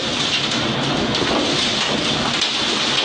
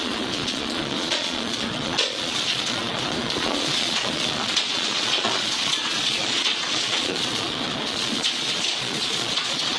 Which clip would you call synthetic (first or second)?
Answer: second